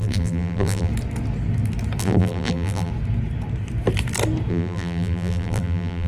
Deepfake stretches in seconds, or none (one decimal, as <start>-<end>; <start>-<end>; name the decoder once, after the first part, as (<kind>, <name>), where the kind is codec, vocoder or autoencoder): 0.0-0.9 (vocoder, BigVGAN v2); 2.0-2.9; 4.5-6.1